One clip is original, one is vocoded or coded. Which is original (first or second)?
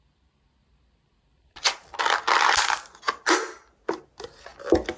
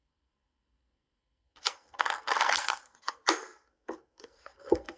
first